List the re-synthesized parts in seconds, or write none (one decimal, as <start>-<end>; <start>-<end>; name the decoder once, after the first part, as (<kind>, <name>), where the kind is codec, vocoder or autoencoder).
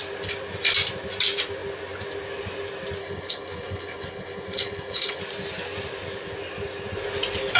3.0-5.2 (codec, HILCodec)